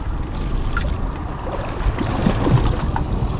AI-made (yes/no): no